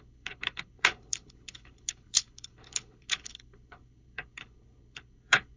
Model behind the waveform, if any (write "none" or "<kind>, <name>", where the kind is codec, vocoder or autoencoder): codec, HILCodec